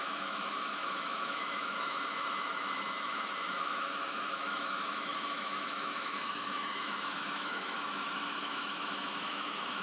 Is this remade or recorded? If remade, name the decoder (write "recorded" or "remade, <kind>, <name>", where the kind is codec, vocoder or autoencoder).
remade, autoencoder, DAC-VAE